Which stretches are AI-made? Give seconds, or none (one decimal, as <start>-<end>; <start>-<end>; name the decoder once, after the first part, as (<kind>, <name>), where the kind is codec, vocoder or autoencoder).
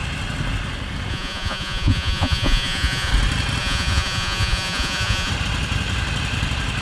1.1-3.1 (vocoder, Vocos); 3.6-5.3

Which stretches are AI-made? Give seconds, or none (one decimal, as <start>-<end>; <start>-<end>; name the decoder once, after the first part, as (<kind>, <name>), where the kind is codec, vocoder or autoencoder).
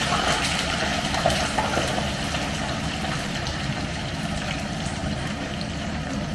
0.0-0.9 (vocoder, BigVGAN v2); 3.3-6.3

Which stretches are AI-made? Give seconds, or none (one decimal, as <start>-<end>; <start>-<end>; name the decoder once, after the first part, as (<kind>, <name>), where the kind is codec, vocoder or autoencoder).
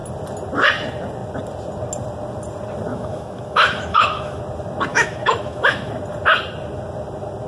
2.9-4.4 (autoencoder, DAC-VAE); 4.9-5.9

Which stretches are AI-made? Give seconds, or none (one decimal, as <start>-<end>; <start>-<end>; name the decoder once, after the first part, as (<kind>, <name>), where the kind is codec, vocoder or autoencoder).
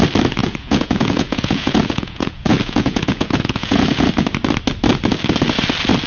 0.4-4.1 (vocoder, Vocos)